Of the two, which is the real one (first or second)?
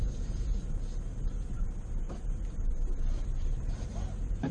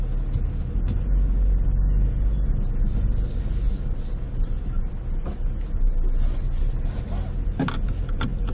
second